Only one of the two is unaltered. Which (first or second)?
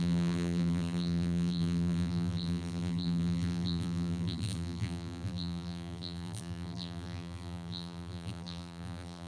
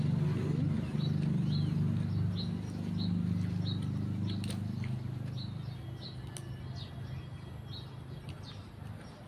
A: second